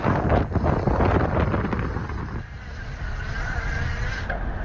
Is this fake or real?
real